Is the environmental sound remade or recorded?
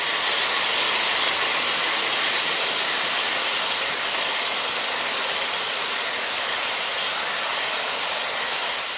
recorded